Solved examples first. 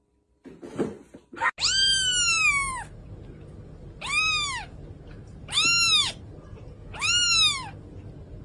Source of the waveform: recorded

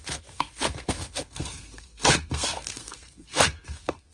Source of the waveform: remade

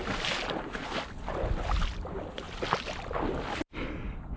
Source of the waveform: recorded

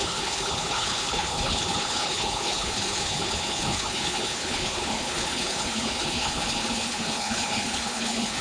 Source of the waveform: remade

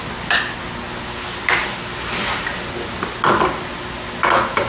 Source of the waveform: recorded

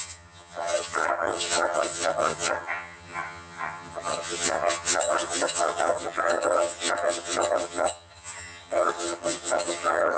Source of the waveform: remade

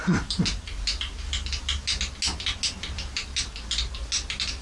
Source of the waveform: recorded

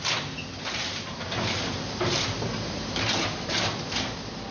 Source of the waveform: recorded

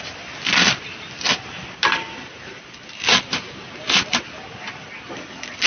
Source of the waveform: recorded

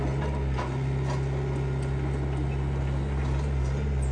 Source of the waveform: recorded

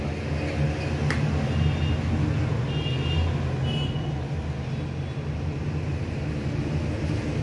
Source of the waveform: recorded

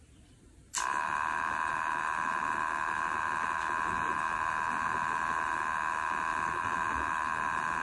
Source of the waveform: recorded